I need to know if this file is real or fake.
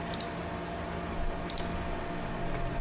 real